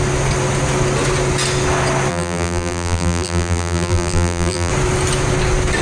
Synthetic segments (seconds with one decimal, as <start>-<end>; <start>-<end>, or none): 2.1-4.7